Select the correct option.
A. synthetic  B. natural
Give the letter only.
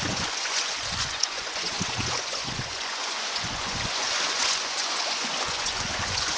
A